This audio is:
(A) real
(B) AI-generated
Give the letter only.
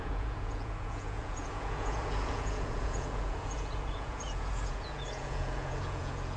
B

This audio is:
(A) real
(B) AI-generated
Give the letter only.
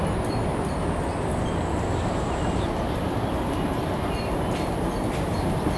A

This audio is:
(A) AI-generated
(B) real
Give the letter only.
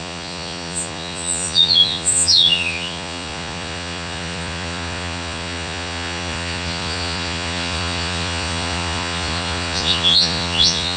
A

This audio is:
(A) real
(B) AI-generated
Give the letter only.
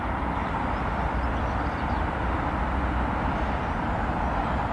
A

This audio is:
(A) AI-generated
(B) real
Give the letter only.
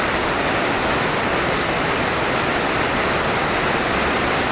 B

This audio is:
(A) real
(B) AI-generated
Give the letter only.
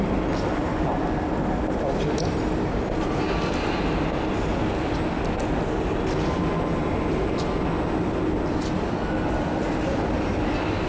A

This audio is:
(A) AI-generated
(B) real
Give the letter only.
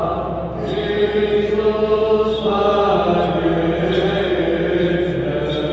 B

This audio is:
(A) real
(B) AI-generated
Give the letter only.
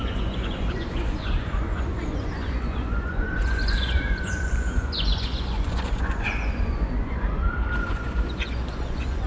B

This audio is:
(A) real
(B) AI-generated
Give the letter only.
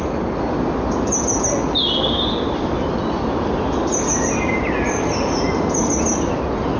A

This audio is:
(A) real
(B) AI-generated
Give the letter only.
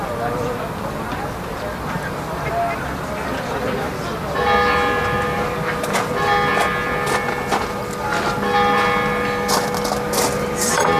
A